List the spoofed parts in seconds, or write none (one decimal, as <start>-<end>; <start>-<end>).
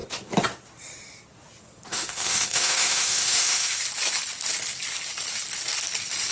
1.9-3.8